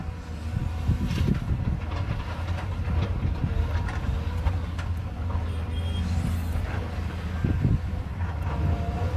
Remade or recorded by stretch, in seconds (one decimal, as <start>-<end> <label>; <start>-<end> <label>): 0.0-9.2 recorded

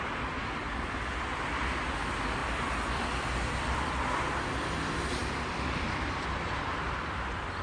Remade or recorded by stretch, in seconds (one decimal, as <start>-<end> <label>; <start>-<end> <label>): 0.0-2.4 recorded; 2.4-4.3 remade; 4.3-5.2 recorded; 5.2-6.2 remade; 6.2-7.6 recorded

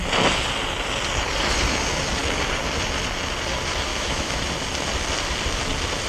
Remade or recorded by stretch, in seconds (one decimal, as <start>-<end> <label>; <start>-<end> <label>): 0.0-3.9 recorded; 3.9-4.4 remade; 4.4-6.1 recorded

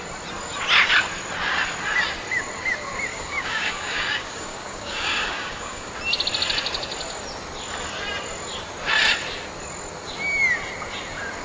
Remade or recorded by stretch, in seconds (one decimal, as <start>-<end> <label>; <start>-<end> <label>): 0.0-3.1 recorded; 3.1-5.9 remade; 5.9-11.4 recorded

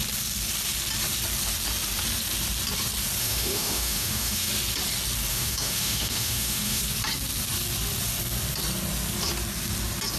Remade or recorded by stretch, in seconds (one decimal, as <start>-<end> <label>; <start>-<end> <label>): 0.0-3.2 recorded; 3.2-4.5 remade; 4.5-5.3 recorded; 5.3-6.8 remade; 6.8-10.2 recorded

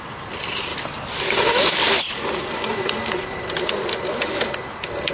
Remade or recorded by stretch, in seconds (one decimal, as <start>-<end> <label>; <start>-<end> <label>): 0.0-5.1 recorded